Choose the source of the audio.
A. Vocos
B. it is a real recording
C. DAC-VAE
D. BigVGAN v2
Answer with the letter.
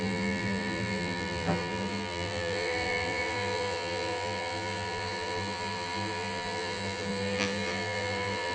D